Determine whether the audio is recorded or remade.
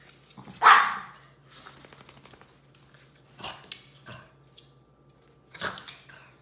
recorded